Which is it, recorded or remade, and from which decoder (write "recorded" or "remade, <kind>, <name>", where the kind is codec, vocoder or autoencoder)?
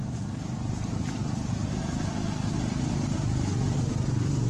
recorded